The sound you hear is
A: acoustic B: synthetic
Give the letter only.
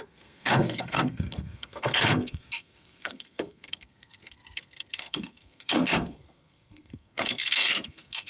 B